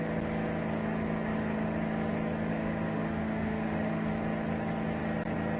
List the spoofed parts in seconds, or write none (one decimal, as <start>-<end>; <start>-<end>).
2.5-4.1